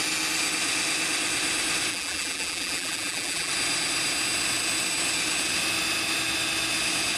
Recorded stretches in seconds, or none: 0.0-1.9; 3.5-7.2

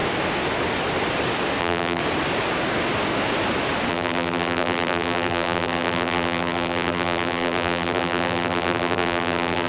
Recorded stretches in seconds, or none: 0.0-1.6; 2.0-3.9

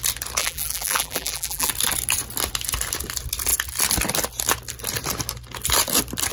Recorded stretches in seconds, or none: 0.0-0.4; 1.7-6.3

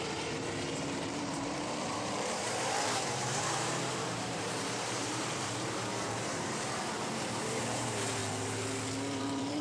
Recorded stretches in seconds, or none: 8.2-9.2

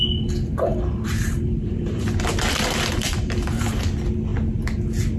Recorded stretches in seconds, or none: 0.0-0.7; 3.8-5.2

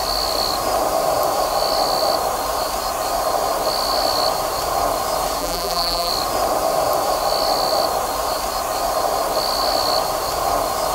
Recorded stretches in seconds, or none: 0.0-5.4; 6.1-10.9